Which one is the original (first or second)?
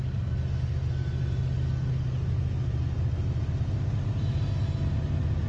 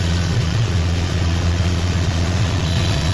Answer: first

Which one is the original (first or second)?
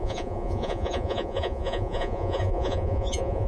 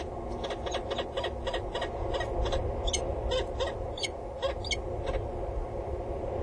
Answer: second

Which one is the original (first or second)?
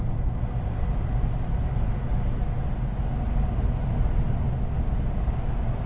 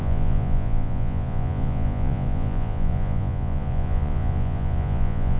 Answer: first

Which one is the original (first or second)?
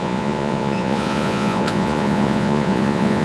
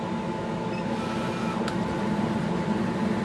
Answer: second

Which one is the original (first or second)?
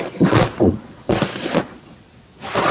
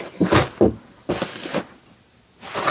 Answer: second